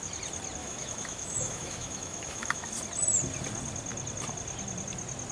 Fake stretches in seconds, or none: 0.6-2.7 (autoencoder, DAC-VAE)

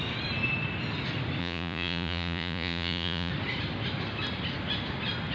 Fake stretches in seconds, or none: 1.4-3.3 (vocoder, Vocos)